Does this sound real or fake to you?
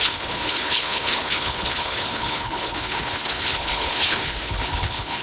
fake